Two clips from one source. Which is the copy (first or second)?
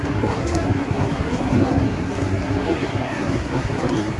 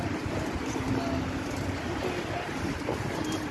first